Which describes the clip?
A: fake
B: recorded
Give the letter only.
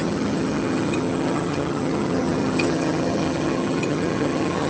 A